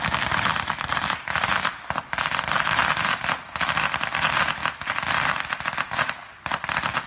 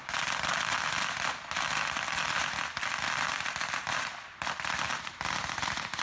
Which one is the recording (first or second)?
first